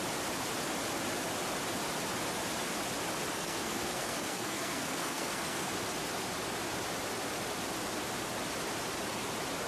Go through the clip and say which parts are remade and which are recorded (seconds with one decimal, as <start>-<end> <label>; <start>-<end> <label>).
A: 0.0-3.3 recorded; 3.3-5.7 remade; 5.7-9.7 recorded